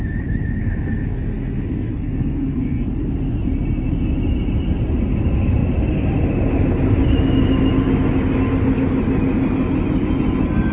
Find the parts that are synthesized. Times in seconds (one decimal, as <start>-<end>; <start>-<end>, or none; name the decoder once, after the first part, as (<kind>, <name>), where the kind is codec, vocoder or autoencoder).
0.6-2.9 (codec, SNAC)